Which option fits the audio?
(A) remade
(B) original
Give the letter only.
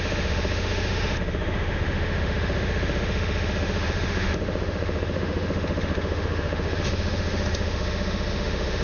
A